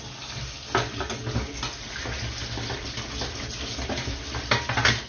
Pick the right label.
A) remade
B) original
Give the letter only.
B